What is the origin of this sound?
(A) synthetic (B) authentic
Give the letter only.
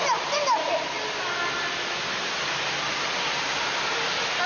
B